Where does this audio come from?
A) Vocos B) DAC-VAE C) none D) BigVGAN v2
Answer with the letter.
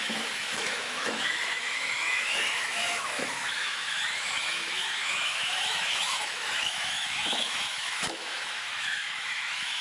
B